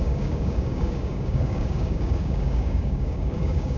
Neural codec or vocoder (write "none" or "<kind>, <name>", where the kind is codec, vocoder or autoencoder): codec, DAC